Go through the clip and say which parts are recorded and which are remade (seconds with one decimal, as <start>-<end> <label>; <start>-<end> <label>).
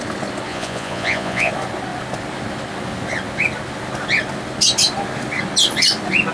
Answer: 0.0-0.5 recorded; 0.5-1.5 remade; 1.5-6.3 recorded